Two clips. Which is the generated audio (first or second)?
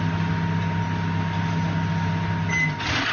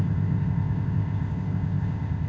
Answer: second